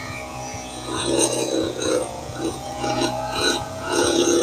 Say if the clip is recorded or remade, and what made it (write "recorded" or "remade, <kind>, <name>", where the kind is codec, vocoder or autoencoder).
remade, vocoder, Vocos